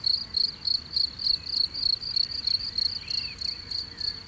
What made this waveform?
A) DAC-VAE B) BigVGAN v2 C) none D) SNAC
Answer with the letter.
C